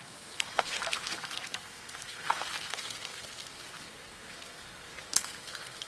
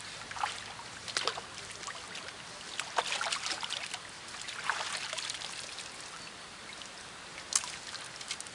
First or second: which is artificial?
first